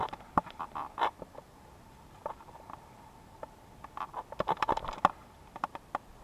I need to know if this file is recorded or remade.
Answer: recorded